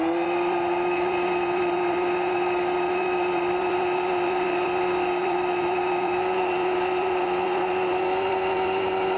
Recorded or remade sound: remade